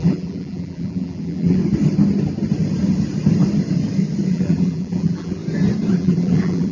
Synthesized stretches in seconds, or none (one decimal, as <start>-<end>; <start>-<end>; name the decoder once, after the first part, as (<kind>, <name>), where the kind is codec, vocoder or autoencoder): 0.0-1.6 (vocoder, BigVGAN v2); 4.3-5.4; 5.9-6.7